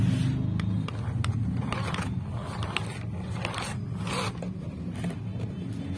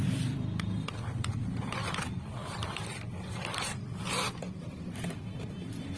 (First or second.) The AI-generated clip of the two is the second